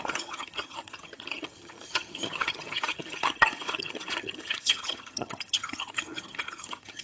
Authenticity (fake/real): fake